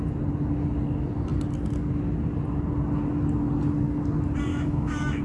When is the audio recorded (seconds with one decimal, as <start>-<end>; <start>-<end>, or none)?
0.0-4.5